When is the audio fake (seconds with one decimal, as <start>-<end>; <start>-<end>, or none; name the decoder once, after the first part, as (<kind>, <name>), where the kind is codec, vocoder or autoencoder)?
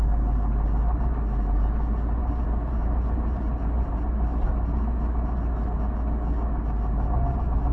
2.2-4.5 (vocoder, BigVGAN v2)